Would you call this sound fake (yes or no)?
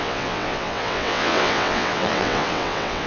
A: yes